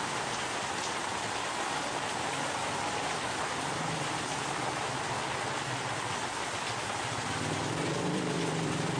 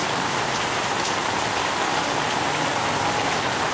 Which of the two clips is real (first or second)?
second